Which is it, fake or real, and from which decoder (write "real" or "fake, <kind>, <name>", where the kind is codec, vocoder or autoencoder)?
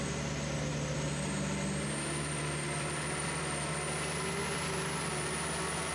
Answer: real